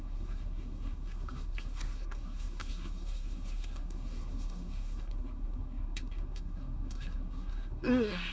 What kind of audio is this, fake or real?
fake